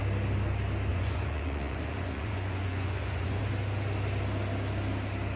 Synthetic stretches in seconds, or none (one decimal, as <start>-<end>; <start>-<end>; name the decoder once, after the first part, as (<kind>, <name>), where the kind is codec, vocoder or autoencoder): 0.9-3.4 (vocoder, Vocos)